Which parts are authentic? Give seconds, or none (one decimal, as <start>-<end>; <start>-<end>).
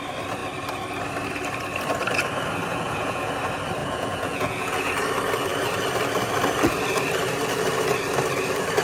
0.0-2.7; 3.3-3.8; 4.9-8.8